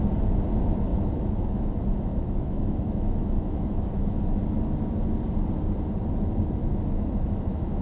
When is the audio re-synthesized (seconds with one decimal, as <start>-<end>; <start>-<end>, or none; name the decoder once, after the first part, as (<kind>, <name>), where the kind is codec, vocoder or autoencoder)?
0.9-1.7 (autoencoder, DAC-VAE); 2.1-4.4; 6.6-7.8